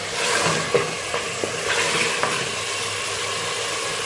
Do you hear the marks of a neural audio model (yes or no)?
no